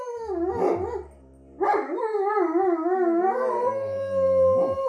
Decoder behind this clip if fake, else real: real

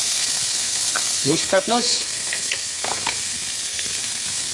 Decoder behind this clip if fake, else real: fake, codec, SNAC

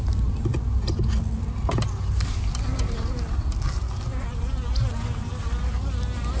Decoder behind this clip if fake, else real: real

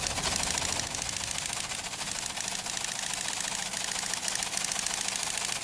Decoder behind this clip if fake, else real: real